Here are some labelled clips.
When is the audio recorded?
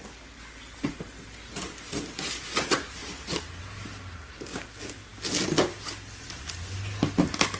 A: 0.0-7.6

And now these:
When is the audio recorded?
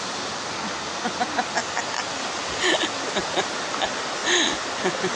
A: 0.0-5.2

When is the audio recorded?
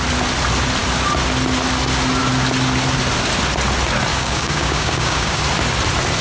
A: 0.0-4.1; 5.4-6.2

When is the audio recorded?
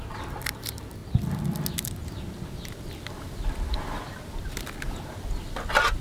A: 0.0-6.0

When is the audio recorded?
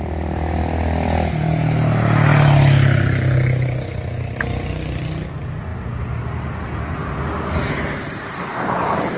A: 0.0-9.2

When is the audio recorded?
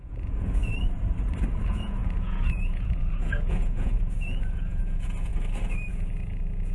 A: 0.6-1.6; 5.3-5.9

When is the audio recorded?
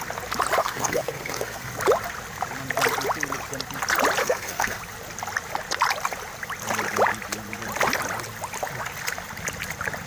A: 0.0-0.6; 1.7-4.2; 4.8-10.1